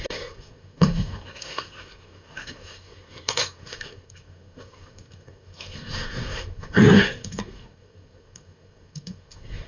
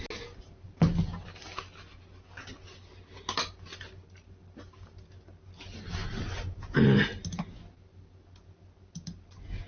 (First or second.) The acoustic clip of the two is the second